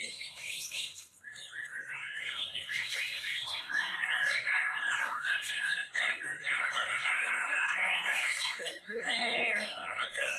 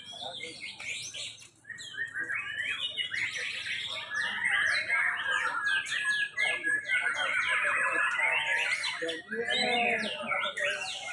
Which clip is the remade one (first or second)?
first